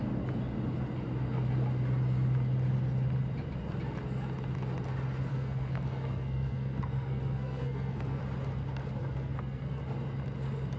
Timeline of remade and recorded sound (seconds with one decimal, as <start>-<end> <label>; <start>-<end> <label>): 0.0-5.3 recorded; 5.3-8.2 remade; 8.2-9.0 recorded; 9.0-9.8 remade; 9.8-10.8 recorded